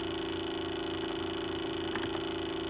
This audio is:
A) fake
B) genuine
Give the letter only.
B